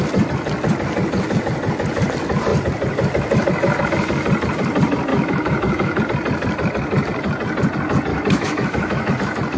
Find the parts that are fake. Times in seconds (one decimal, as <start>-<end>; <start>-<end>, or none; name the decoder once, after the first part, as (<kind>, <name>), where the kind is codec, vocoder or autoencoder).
5.1-6.0 (autoencoder, DAC-VAE); 8.1-9.1